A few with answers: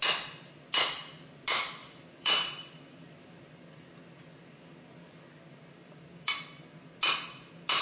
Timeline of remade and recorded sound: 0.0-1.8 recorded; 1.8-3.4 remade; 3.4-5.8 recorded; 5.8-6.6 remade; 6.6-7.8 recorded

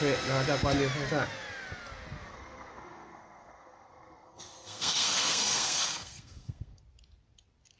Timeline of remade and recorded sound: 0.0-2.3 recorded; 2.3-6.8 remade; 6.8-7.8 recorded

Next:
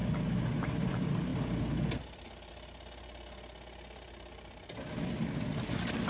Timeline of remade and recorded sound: 0.0-6.1 recorded